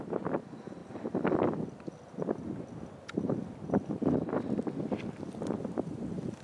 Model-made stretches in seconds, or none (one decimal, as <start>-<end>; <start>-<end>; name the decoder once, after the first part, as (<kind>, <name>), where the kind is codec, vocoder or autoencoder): none